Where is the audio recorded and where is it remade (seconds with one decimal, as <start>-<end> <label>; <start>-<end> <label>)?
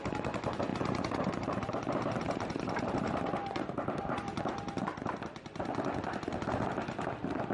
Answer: 0.0-0.7 recorded; 0.7-4.4 remade; 4.4-7.5 recorded